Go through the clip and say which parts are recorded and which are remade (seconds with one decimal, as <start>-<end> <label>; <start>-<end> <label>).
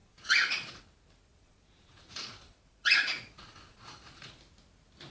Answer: 0.0-0.8 remade; 0.8-1.3 recorded; 1.3-4.4 remade; 4.4-5.1 recorded